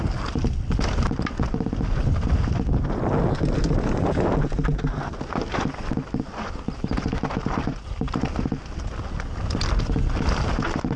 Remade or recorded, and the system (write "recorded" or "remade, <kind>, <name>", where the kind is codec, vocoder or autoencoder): recorded